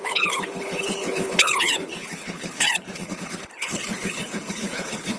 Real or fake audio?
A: fake